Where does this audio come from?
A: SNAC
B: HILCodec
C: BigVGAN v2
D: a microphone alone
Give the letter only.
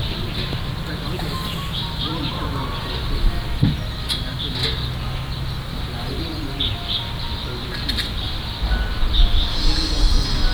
D